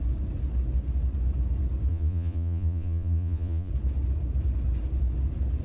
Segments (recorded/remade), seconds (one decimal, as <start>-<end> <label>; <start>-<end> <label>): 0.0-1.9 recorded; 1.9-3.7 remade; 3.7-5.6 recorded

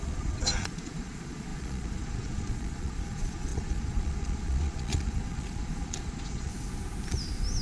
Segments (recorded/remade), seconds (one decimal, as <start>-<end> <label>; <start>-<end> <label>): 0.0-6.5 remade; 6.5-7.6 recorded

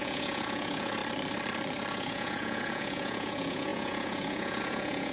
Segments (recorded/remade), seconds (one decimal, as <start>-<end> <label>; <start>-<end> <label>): 0.0-1.0 remade; 1.0-1.9 recorded; 1.9-5.1 remade

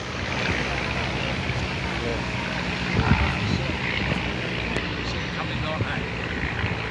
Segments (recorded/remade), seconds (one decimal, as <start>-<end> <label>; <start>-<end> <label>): 0.0-6.9 recorded